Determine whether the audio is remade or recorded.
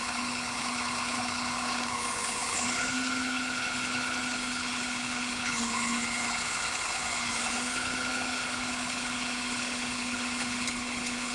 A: remade